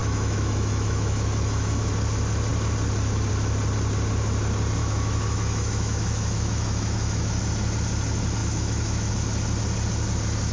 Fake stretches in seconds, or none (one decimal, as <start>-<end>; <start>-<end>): 0.0-1.9; 4.8-7.4; 8.4-9.1